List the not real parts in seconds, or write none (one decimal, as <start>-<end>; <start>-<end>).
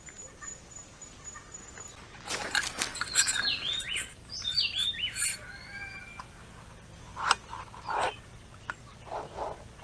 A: none